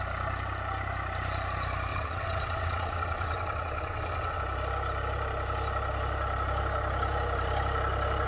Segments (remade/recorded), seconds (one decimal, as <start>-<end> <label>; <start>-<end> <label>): 0.0-1.9 recorded; 1.9-4.4 remade; 4.4-8.3 recorded